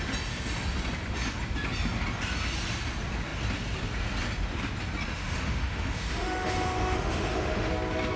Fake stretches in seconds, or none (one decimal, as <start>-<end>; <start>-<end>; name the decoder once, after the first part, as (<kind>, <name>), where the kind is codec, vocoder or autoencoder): 5.1-7.7 (autoencoder, DAC-VAE)